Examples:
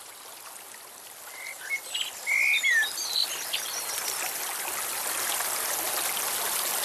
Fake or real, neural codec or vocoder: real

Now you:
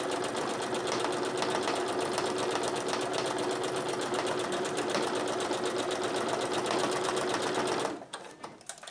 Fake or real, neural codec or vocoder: real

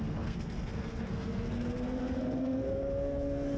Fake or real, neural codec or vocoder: fake, codec, SNAC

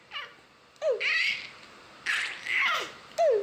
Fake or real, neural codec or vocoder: real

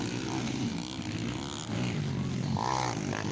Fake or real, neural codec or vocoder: real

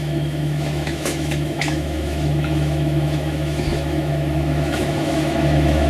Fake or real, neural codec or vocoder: fake, autoencoder, DAC-VAE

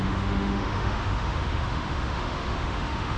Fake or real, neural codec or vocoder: fake, autoencoder, DAC-VAE